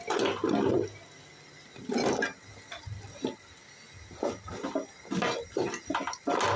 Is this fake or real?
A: real